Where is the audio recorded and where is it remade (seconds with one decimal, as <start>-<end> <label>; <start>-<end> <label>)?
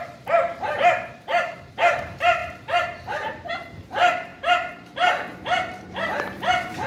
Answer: 0.0-6.9 remade